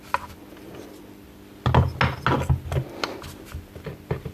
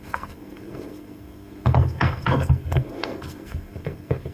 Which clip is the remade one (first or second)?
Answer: second